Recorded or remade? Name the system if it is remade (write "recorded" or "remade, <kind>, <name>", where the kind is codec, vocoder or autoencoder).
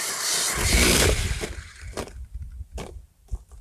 remade, vocoder, BigVGAN v2